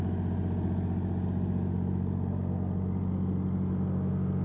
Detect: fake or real real